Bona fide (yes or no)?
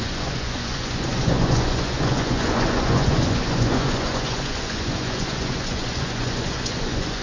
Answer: no